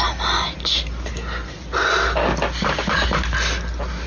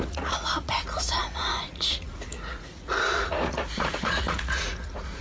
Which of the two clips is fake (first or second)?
second